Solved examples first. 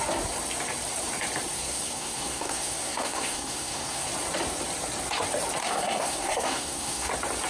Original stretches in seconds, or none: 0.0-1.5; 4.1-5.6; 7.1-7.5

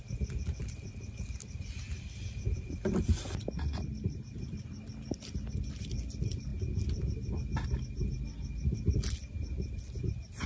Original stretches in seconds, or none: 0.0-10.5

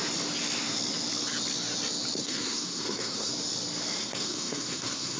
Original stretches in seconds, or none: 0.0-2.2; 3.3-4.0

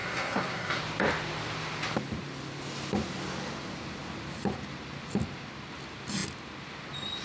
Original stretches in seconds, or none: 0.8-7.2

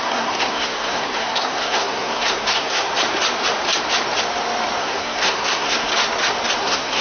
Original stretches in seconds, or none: 2.9-4.8; 5.9-6.6